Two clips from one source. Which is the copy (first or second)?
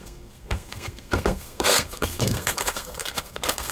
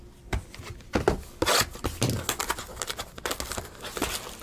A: first